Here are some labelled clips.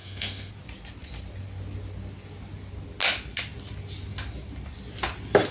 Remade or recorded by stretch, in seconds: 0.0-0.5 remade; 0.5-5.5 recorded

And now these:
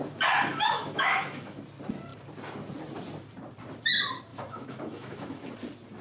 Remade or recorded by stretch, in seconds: 0.0-0.5 recorded; 0.5-1.6 remade; 1.6-4.3 recorded; 4.3-5.5 remade; 5.5-6.0 recorded

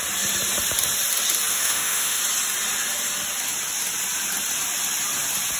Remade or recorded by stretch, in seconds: 0.0-1.5 recorded; 1.5-2.2 remade; 2.2-5.6 recorded

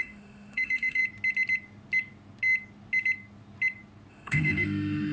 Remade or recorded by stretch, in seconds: 0.0-1.0 remade; 1.0-4.1 recorded; 4.1-5.1 remade

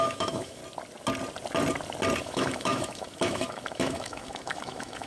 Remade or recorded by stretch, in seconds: 0.0-0.6 remade; 0.6-2.2 recorded; 2.2-5.1 remade